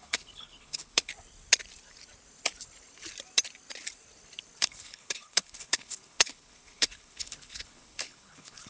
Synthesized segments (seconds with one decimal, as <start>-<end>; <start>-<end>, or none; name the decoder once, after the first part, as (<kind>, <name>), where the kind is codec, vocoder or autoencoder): 0.0-1.1 (codec, HILCodec); 4.6-8.7